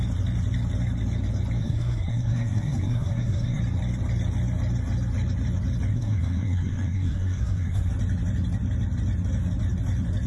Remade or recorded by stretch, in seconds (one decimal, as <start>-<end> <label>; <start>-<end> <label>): 0.0-1.6 recorded; 1.6-3.6 remade; 3.6-5.9 recorded; 5.9-7.9 remade; 7.9-10.3 recorded